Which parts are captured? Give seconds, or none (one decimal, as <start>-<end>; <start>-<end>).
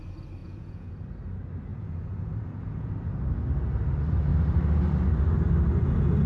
0.0-0.4; 0.9-1.7; 2.9-6.3